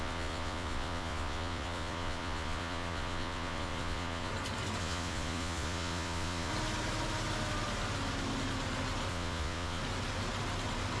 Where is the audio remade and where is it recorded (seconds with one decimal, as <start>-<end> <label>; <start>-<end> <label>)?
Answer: 0.0-4.3 remade; 4.3-4.8 recorded; 4.8-6.5 remade; 6.5-9.1 recorded; 9.1-9.8 remade; 9.8-11.0 recorded